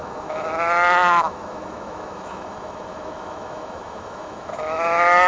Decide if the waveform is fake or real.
fake